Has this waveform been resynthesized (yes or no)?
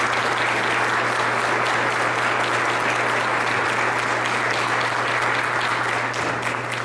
no